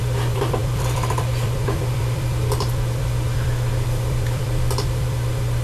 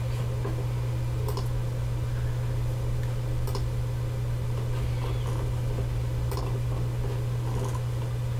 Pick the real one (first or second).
second